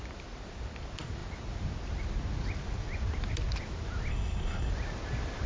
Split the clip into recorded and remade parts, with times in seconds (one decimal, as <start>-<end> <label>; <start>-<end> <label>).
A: 0.0-4.1 recorded; 4.1-4.7 remade; 4.7-5.5 recorded